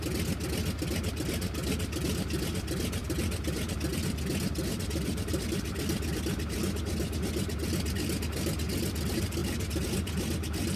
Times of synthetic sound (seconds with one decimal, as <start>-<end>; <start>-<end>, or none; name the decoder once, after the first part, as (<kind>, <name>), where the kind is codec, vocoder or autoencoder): none